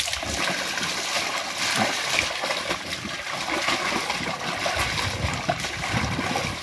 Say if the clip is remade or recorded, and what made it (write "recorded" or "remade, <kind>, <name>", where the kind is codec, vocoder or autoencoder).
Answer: recorded